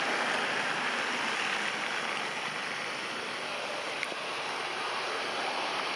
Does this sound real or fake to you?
real